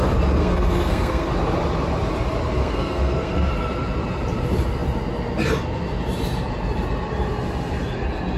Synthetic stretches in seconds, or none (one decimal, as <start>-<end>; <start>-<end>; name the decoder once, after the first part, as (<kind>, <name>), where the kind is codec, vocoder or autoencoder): 0.4-1.3 (codec, SNAC); 2.6-3.5